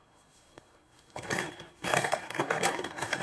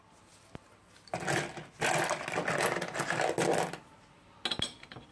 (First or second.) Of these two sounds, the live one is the second